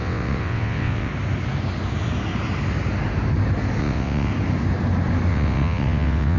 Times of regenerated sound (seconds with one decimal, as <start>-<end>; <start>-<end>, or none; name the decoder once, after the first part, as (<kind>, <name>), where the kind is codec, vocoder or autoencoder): 0.0-1.1 (vocoder, WaveNeXt); 3.8-4.3; 5.3-6.4